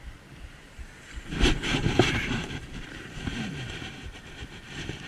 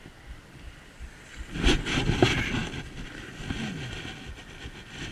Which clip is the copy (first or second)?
first